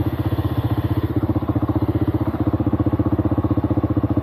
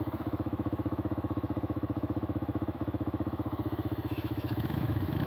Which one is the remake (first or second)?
second